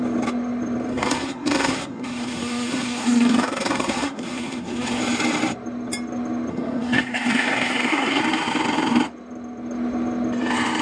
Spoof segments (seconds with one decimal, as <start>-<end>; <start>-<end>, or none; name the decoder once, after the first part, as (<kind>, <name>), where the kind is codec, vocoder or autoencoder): 0.9-5.0 (codec, SNAC); 6.5-8.2